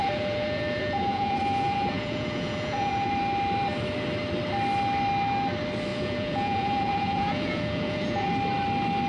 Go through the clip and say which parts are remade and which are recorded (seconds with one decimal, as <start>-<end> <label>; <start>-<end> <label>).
0.0-3.1 remade; 3.1-5.9 recorded; 5.9-8.3 remade; 8.3-9.1 recorded